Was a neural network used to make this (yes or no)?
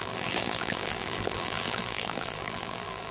yes